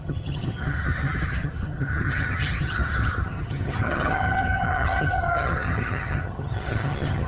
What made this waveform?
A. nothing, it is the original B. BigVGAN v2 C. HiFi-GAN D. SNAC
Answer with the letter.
C